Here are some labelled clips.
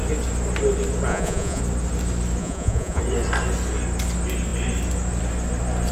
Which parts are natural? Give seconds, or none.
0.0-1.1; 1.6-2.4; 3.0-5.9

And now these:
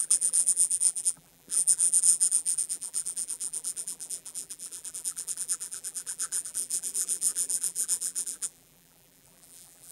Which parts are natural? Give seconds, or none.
none

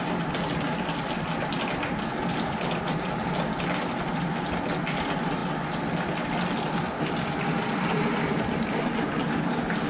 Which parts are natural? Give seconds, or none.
0.0-9.9

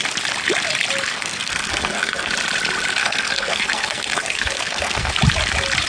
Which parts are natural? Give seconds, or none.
0.0-1.1; 2.3-3.0; 5.1-5.9

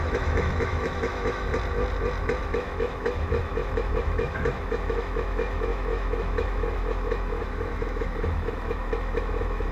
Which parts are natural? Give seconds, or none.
1.5-2.4

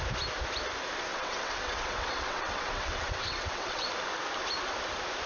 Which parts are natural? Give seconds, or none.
0.0-1.1; 3.9-5.3

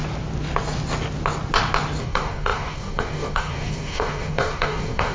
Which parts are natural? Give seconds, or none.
0.0-2.0

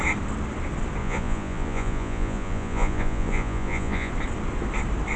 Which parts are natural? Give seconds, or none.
0.0-1.0; 4.1-5.2